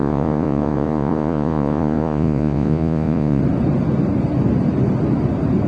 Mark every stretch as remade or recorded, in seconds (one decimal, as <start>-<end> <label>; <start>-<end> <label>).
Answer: 0.0-3.4 remade; 3.4-5.7 recorded